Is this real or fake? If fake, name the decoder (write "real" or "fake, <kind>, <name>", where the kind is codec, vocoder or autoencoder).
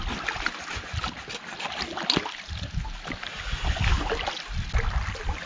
real